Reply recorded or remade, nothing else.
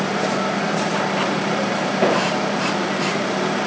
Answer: remade